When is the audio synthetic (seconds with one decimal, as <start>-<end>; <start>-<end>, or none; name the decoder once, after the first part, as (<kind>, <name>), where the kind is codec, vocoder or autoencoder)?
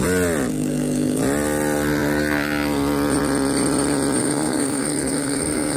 0.5-1.2 (codec, SNAC); 4.2-5.8